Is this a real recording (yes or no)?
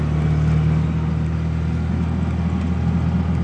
yes